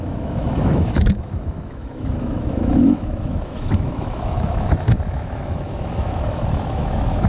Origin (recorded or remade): remade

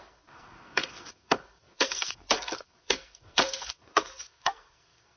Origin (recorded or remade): remade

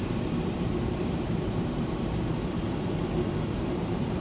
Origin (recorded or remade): remade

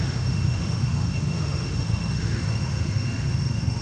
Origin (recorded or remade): remade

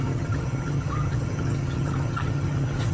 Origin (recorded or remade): remade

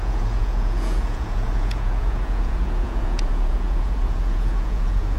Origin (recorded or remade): remade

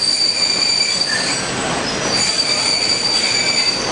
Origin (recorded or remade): recorded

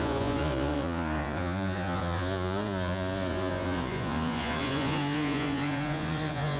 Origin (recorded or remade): remade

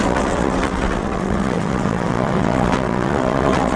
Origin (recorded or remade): remade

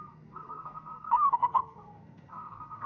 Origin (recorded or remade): remade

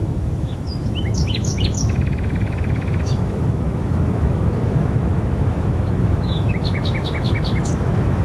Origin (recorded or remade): remade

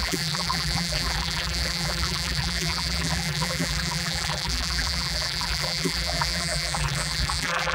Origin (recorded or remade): remade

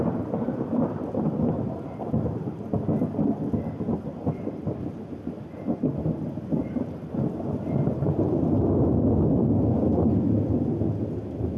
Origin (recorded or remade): recorded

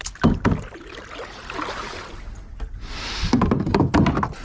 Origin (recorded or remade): recorded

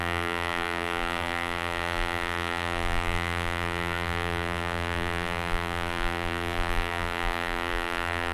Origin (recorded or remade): remade